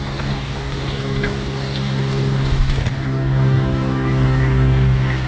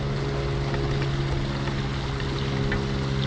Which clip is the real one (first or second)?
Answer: second